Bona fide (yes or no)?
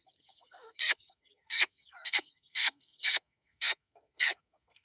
no